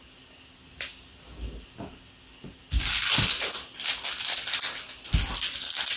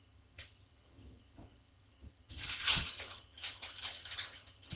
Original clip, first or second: first